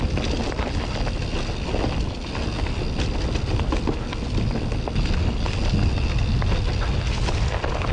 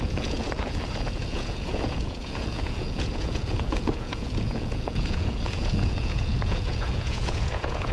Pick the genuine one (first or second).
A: first